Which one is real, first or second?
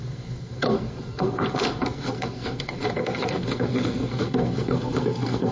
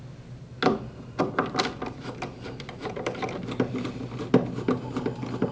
second